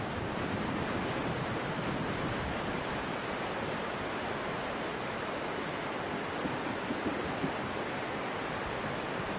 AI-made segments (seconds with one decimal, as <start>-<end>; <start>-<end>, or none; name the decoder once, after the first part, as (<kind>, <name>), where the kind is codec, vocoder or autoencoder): 1.2-5.9 (vocoder, BigVGAN v2)